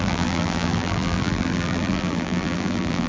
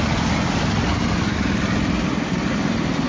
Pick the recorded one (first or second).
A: second